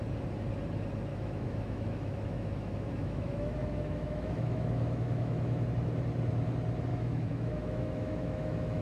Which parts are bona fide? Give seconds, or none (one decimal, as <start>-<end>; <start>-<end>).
0.0-1.1; 5.7-6.9